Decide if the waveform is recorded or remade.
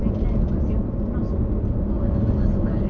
recorded